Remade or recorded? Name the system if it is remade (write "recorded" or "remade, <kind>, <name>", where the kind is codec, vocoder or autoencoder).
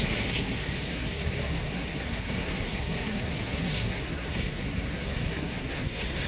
remade, codec, SNAC